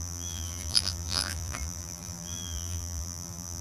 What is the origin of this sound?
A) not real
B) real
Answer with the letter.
A